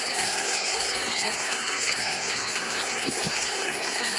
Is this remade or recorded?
remade